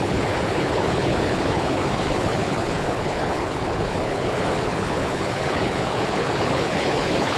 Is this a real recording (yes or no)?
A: no